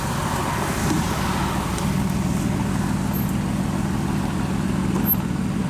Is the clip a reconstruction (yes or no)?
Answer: no